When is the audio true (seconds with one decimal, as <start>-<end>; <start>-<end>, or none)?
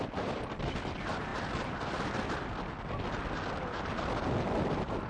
0.0-5.1